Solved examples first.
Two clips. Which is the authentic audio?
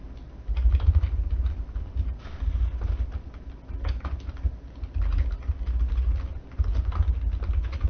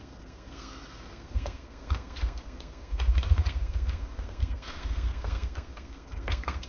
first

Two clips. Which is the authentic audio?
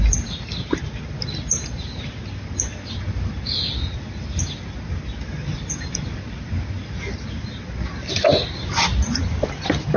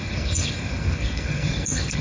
first